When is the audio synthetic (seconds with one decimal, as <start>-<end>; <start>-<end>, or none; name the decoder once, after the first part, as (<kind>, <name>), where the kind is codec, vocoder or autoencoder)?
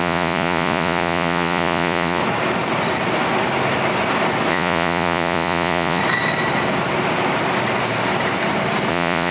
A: 0.0-2.2 (vocoder, Vocos); 4.5-6.0; 8.9-9.3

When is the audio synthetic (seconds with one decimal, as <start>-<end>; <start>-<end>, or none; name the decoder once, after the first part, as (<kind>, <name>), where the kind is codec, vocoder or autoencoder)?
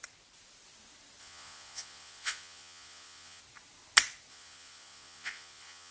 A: 1.2-3.4 (vocoder, Vocos); 4.3-5.9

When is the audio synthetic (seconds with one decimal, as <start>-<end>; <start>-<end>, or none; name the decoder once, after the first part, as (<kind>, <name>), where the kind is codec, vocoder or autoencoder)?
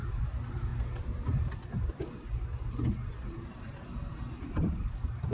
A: none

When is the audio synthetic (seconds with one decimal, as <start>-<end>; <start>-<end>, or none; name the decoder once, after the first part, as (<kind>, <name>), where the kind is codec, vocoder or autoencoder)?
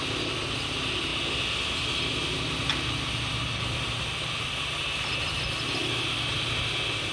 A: none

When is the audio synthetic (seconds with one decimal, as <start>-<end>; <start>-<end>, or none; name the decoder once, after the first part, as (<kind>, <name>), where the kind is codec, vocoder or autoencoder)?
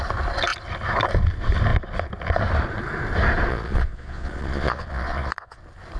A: 3.5-5.6 (vocoder, Vocos)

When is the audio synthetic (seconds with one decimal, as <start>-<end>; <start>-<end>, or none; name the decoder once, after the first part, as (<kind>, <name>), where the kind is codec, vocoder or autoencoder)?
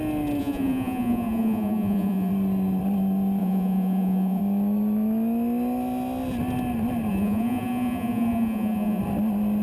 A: 0.4-2.3 (vocoder, Vocos); 3.4-4.4; 7.1-9.0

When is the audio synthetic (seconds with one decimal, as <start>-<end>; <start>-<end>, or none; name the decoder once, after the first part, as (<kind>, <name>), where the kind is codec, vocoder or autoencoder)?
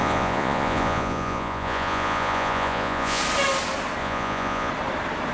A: 0.0-3.2 (vocoder, Vocos); 4.0-4.7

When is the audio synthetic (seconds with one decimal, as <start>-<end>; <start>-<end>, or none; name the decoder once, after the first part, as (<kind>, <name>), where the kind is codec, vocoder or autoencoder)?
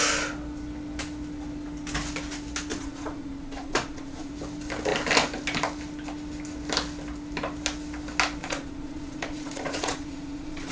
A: 2.7-4.3 (vocoder, Vocos); 8.4-10.7